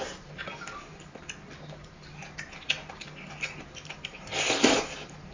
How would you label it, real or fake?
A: real